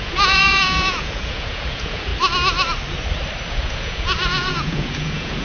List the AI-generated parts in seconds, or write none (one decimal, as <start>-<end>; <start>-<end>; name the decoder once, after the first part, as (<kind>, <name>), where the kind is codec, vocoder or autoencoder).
0.0-2.1 (vocoder, Vocos); 3.5-5.4